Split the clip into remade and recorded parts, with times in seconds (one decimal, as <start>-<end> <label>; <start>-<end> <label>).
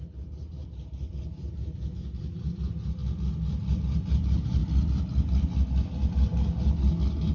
0.0-3.0 remade; 3.0-4.1 recorded; 4.1-4.6 remade; 4.6-7.3 recorded